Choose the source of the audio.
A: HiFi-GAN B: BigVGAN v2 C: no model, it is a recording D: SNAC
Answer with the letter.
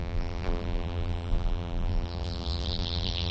B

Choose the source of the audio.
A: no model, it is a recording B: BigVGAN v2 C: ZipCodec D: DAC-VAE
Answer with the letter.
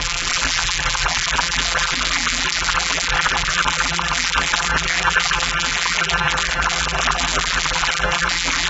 B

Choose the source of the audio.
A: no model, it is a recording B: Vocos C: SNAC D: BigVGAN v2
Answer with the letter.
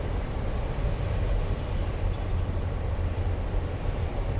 D